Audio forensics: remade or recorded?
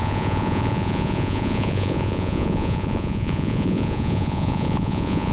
remade